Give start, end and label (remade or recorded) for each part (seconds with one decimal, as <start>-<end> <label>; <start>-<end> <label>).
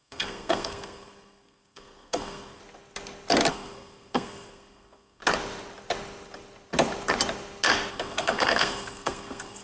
0.0-2.6 remade; 2.6-3.5 recorded; 3.5-5.2 remade; 5.2-7.9 recorded; 7.9-9.6 remade